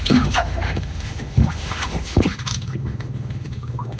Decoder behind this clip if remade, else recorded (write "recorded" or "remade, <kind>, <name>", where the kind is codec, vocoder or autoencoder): remade, autoencoder, DAC-VAE